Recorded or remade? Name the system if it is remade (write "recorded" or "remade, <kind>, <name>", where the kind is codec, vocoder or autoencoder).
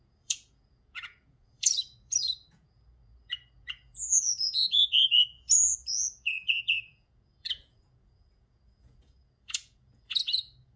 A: remade, vocoder, Vocos